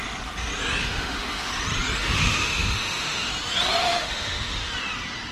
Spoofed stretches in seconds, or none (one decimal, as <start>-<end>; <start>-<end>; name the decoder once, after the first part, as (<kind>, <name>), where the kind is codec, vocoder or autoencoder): 0.8-1.5 (autoencoder, DAC-VAE); 2.0-3.3; 3.8-4.7